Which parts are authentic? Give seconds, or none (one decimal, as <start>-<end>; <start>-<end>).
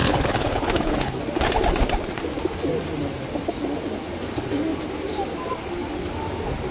1.2-6.7